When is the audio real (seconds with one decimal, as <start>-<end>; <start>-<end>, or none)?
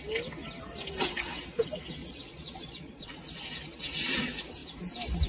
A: 0.0-2.0; 3.1-5.3